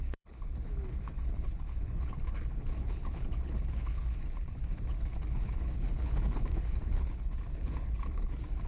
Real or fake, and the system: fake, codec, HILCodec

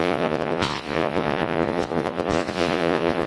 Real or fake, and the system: fake, vocoder, Vocos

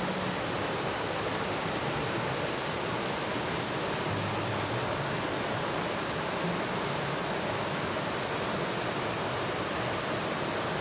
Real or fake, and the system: real